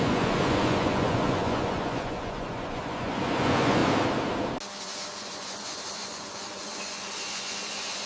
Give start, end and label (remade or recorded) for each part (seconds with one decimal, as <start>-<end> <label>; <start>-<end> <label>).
0.0-3.8 remade; 3.8-4.8 recorded; 4.8-8.1 remade